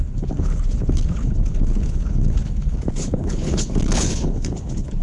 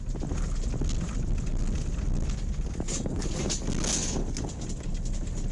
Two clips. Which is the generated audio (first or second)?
first